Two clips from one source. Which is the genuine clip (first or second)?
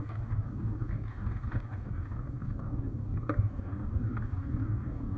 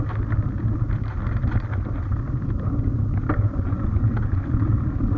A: second